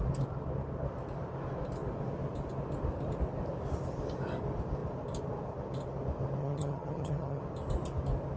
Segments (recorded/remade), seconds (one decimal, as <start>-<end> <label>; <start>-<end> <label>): 0.0-6.4 recorded; 6.4-7.4 remade; 7.4-8.4 recorded